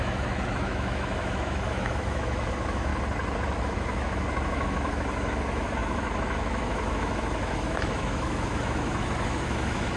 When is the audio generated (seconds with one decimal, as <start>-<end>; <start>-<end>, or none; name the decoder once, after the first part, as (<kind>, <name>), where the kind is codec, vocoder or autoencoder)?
0.0-2.9 (autoencoder, DAC-VAE); 3.6-10.0